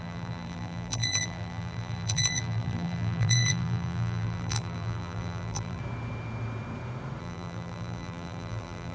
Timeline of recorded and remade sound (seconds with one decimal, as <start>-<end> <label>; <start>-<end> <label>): 0.0-5.8 remade; 5.8-7.2 recorded; 7.2-8.9 remade